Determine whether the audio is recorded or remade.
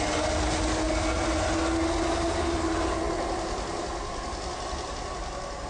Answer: recorded